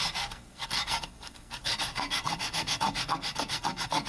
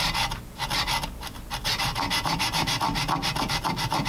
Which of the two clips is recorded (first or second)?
second